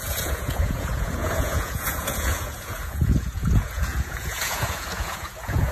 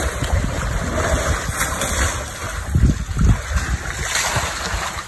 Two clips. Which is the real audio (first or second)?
second